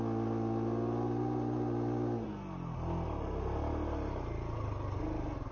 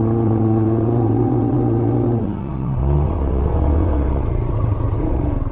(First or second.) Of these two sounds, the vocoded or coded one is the second